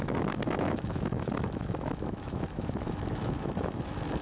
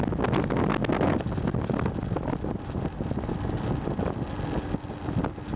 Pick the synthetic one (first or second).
first